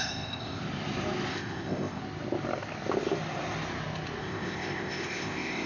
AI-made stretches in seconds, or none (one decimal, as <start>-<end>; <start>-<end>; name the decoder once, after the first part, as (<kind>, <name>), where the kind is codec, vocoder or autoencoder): 0.0-0.6 (codec, ZipCodec); 1.3-2.0; 4.2-5.7